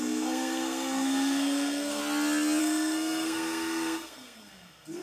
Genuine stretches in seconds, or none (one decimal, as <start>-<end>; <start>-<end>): 2.0-2.6